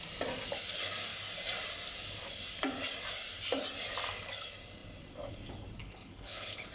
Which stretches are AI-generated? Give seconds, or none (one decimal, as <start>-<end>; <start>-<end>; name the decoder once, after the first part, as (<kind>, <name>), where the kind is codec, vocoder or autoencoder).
5.8-6.7 (codec, HILCodec)